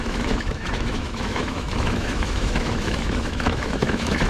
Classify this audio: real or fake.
fake